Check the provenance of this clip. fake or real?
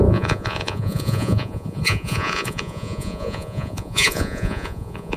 fake